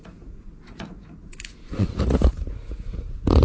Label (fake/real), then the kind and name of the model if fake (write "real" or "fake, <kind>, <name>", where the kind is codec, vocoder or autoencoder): fake, vocoder, Vocos